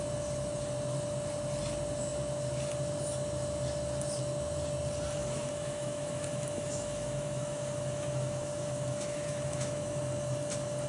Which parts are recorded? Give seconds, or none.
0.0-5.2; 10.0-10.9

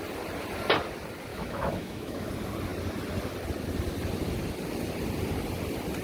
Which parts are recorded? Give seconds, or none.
0.0-1.3; 2.3-6.0

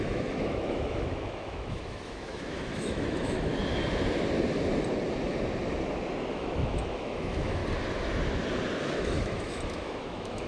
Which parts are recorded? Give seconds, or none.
3.5-6.3; 7.6-8.8